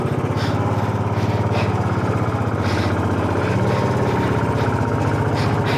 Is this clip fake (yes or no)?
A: no